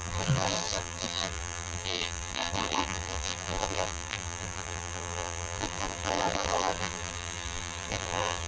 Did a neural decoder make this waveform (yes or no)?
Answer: yes